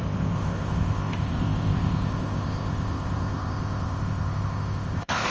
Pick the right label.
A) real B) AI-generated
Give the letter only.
B